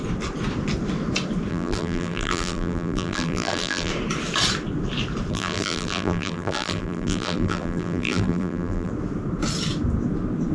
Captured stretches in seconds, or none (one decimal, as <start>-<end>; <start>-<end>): 0.0-1.5; 3.9-5.3; 8.9-10.5